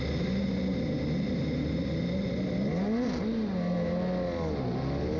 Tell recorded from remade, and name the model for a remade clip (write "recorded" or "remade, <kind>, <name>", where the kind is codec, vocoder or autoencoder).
recorded